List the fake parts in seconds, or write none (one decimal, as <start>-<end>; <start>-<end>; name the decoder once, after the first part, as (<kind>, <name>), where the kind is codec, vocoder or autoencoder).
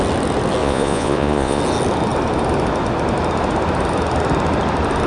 0.6-1.6 (vocoder, Vocos)